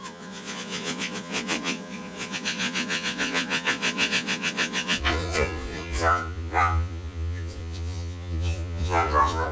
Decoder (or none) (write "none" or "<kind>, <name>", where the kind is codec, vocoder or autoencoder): vocoder, Vocos